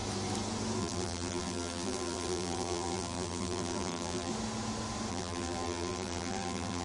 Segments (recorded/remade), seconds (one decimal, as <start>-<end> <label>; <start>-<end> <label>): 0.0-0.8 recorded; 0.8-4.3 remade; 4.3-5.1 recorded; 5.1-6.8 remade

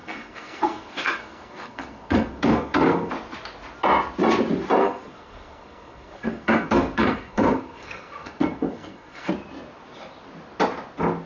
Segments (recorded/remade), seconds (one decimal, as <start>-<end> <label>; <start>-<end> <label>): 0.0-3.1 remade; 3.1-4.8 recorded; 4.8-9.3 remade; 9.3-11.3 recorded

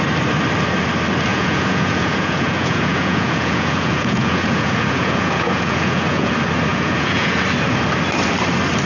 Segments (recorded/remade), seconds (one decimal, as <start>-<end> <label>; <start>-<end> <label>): 0.0-1.3 recorded; 1.3-6.3 remade; 6.3-6.7 recorded; 6.7-7.4 remade; 7.4-8.9 recorded

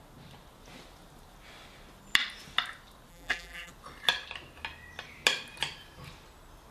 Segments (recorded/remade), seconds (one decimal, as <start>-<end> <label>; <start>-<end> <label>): 0.0-3.1 recorded; 3.1-3.7 remade; 3.7-6.7 recorded

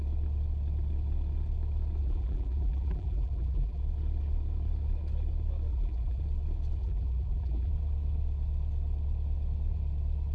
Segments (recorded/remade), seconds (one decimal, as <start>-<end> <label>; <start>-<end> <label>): 0.0-2.0 recorded; 2.0-3.8 remade; 3.8-5.7 recorded; 5.7-6.2 remade; 6.2-6.8 recorded; 6.8-7.7 remade; 7.7-10.3 recorded

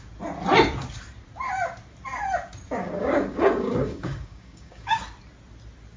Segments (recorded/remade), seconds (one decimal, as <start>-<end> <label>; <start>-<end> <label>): 0.0-2.8 recorded; 2.8-5.0 remade; 5.0-6.0 recorded

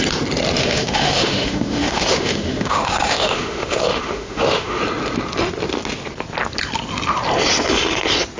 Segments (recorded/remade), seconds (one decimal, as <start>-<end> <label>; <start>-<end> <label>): 0.0-0.6 recorded; 0.6-4.8 remade; 4.8-8.4 recorded